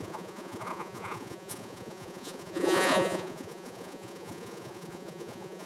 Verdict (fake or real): fake